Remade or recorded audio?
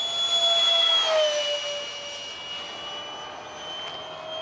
recorded